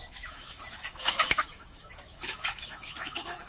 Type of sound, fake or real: fake